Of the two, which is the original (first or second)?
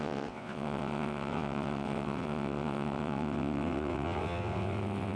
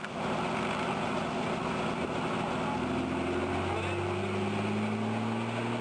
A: second